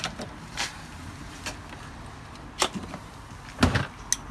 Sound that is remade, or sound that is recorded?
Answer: recorded